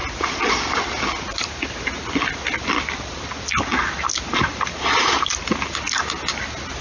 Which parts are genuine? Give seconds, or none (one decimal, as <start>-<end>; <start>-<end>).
0.0-6.8